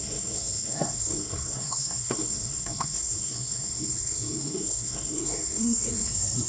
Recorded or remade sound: remade